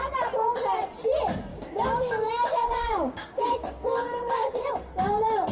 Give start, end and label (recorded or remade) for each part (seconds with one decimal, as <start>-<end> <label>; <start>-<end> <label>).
0.0-1.5 recorded; 1.5-4.7 remade; 4.7-5.5 recorded